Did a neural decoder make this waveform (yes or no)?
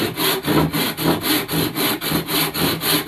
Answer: no